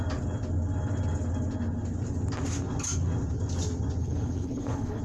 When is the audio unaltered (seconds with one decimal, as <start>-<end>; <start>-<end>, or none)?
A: 0.0-4.0